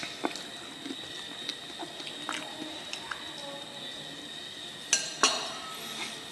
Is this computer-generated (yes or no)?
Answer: no